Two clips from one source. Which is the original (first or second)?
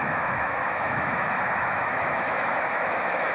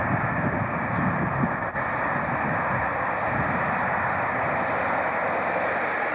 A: second